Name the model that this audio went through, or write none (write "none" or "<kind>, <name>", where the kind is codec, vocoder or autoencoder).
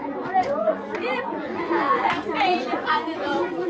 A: vocoder, Vocos